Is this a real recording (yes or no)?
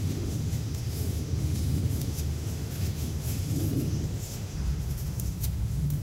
no